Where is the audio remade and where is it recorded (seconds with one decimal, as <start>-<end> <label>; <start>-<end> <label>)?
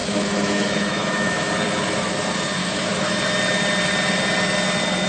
0.0-1.5 remade; 1.5-2.6 recorded; 2.6-3.2 remade; 3.2-5.1 recorded